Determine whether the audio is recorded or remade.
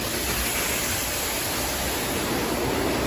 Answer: recorded